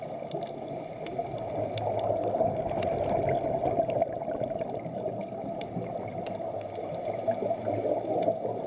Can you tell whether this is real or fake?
real